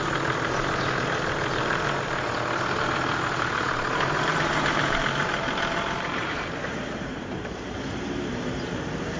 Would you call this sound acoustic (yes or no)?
no